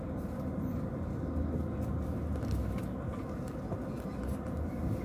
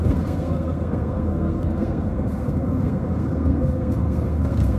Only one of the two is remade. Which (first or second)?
second